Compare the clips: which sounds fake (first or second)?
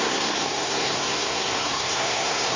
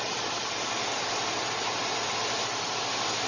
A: first